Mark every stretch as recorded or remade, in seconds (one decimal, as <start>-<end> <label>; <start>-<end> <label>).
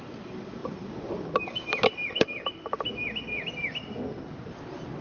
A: 0.0-5.0 recorded